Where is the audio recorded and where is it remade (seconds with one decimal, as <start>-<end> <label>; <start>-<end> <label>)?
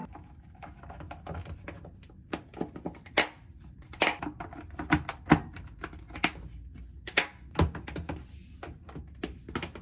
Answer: 0.0-9.8 recorded